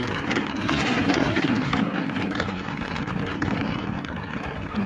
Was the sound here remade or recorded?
remade